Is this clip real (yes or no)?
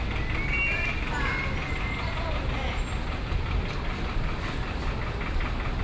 yes